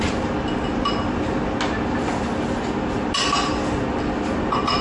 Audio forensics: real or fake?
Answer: real